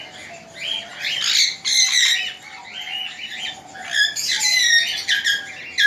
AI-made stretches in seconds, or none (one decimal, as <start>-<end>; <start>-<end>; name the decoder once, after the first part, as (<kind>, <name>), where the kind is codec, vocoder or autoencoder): none